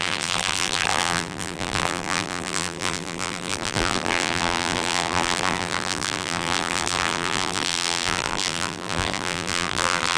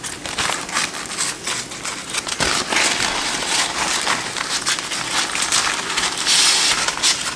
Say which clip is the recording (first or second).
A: second